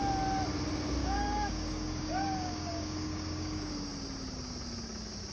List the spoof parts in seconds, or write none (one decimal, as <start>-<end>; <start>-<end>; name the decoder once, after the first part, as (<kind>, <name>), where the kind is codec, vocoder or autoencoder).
1.0-3.7 (codec, DAC)